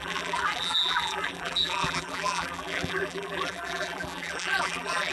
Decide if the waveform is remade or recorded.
remade